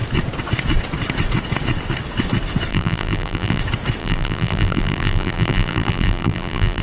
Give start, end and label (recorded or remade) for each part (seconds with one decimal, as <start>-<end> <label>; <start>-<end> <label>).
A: 0.0-2.7 recorded; 2.7-3.6 remade; 3.6-4.0 recorded; 4.0-6.8 remade